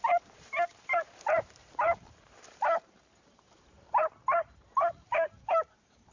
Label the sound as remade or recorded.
remade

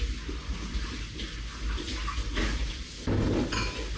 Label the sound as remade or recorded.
recorded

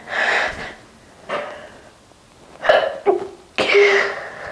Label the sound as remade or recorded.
recorded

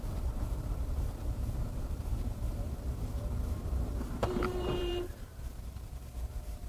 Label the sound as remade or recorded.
remade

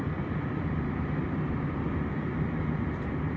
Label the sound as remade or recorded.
remade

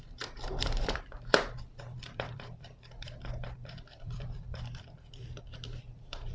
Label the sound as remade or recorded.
remade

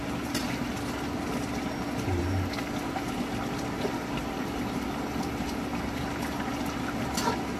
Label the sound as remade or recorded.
recorded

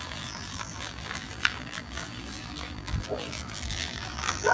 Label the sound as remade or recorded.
remade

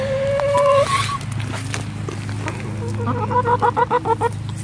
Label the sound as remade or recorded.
recorded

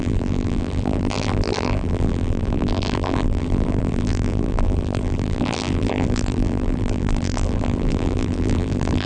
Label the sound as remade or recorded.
remade